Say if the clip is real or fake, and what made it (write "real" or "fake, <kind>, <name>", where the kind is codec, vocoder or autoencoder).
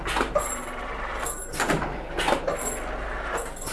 real